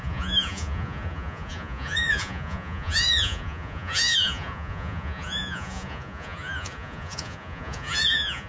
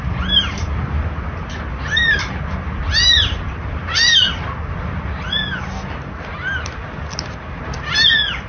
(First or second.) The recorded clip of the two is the second